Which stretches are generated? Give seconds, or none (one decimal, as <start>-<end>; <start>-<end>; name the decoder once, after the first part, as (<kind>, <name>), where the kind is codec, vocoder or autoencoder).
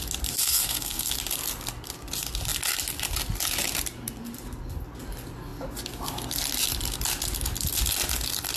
0.4-1.1 (codec, SNAC)